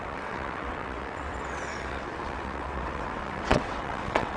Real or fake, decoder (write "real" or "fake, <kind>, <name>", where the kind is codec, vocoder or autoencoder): fake, vocoder, WaveNeXt